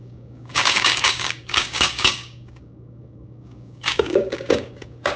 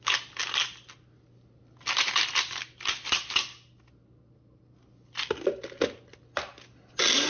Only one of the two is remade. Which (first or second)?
first